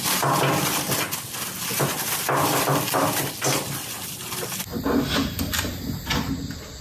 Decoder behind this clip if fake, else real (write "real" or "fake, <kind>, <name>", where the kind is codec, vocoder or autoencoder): real